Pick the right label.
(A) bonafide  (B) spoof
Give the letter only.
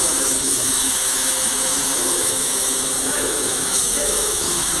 B